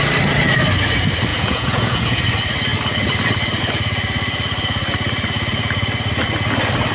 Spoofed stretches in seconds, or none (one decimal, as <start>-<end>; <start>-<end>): 1.3-2.2